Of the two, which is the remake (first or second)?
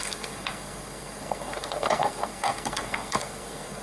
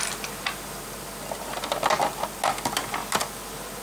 first